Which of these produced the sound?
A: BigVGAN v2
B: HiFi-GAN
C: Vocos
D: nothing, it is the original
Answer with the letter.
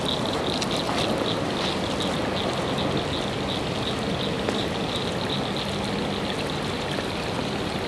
D